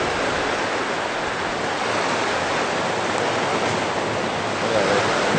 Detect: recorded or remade recorded